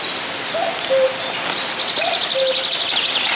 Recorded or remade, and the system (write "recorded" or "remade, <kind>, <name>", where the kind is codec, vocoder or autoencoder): recorded